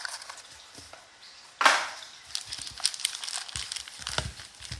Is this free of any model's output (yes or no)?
yes